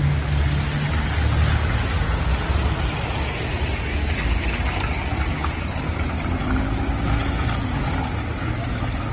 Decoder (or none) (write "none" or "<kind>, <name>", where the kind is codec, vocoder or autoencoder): none